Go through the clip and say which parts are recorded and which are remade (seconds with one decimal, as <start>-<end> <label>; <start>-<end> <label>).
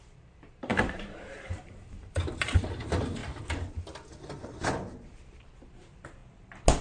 0.0-3.2 remade; 3.2-5.7 recorded; 5.7-6.2 remade; 6.2-6.8 recorded